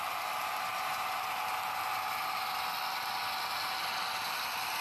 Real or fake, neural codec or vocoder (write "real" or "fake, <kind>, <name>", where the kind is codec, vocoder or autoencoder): real